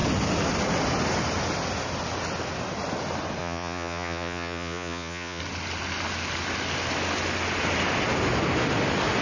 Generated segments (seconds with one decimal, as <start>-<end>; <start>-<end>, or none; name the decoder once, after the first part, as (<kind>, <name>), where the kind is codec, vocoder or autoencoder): 3.4-5.4 (vocoder, Vocos)